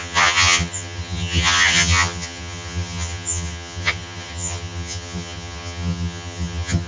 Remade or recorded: remade